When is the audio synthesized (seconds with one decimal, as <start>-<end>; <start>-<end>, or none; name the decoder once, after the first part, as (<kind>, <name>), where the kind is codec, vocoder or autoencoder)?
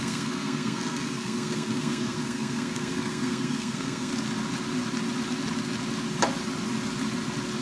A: 0.0-4.1 (codec, SNAC)